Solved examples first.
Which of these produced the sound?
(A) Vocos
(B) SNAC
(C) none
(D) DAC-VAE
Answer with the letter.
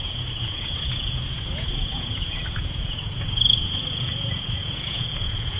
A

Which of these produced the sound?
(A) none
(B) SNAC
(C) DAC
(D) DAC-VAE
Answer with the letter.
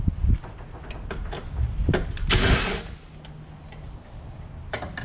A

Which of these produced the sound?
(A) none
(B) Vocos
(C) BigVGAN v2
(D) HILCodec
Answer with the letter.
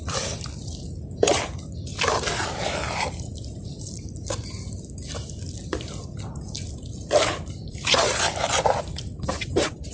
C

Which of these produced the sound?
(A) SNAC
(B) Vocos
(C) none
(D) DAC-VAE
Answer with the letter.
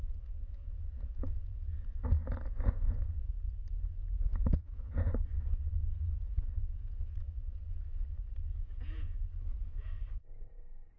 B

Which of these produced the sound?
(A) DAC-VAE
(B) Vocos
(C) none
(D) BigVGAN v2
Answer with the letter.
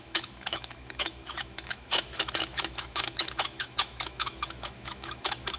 A